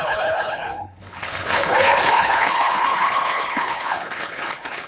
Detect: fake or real fake